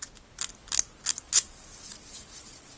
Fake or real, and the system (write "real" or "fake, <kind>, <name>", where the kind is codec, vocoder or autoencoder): real